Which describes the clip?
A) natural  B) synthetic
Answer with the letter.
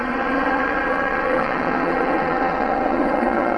B